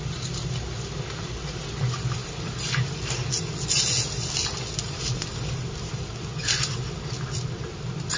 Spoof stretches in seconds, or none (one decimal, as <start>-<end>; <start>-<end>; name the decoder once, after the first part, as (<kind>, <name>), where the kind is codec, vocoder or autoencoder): none